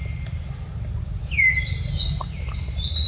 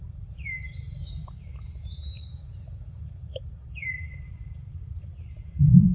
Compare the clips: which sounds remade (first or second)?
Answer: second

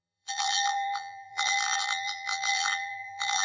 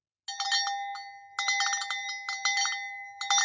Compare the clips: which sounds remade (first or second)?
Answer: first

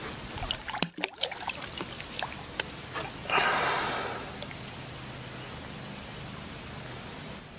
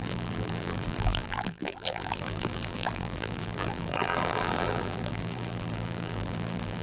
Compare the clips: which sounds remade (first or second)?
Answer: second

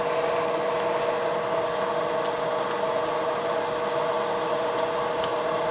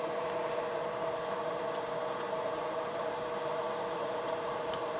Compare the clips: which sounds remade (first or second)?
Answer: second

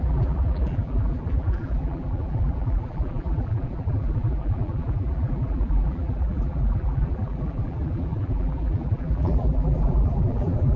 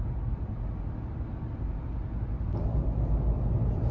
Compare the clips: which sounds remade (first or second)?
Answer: first